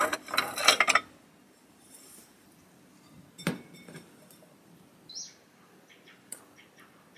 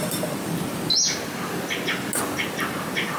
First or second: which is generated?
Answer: first